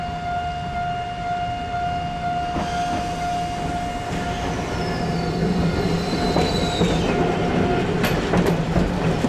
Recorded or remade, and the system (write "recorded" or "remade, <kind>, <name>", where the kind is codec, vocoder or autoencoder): recorded